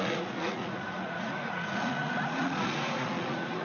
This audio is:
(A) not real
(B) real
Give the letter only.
A